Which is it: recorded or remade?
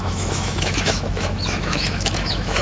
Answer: remade